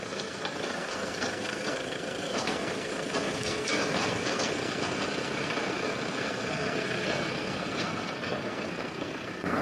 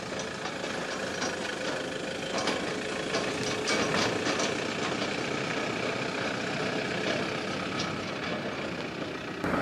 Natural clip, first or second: second